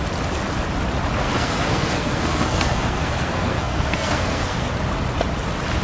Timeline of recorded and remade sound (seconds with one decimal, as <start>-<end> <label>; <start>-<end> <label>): 0.0-1.2 recorded; 1.2-4.7 remade; 4.7-5.8 recorded